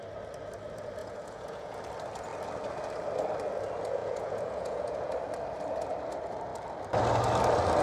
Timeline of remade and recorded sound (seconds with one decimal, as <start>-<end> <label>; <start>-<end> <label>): 0.0-1.0 recorded; 1.0-1.8 remade; 1.8-4.0 recorded; 4.0-5.1 remade; 5.1-7.8 recorded